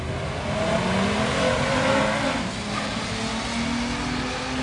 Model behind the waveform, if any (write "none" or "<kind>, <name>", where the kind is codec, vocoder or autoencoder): none